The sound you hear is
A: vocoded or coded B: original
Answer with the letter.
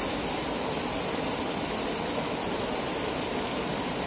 B